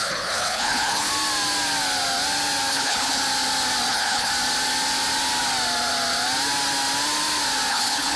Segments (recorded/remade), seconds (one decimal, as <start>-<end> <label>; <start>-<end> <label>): 0.0-1.1 remade; 1.1-2.7 recorded; 2.7-3.2 remade; 3.2-3.9 recorded; 3.9-4.3 remade; 4.3-7.7 recorded; 7.7-8.2 remade